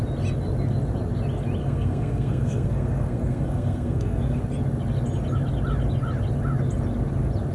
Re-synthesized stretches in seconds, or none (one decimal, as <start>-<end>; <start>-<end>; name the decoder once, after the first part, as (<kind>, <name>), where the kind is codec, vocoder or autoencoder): 1.6-4.4 (codec, SNAC)